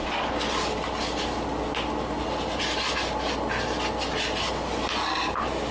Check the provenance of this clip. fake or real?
real